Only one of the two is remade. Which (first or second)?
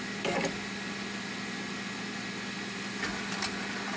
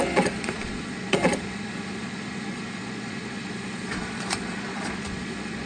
second